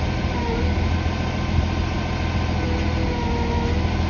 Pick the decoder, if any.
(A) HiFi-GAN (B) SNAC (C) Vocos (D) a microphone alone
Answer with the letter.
D